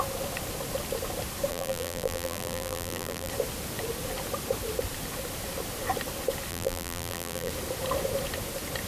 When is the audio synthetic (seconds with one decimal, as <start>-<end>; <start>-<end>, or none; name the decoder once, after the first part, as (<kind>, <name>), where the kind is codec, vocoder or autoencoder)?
1.5-3.3 (vocoder, BigVGAN v2); 6.5-7.5